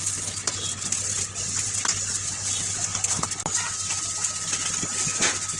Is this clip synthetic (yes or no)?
no